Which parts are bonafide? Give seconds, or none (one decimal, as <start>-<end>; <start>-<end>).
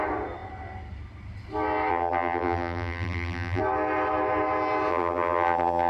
0.0-1.9; 3.6-4.9